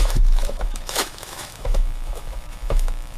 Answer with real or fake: fake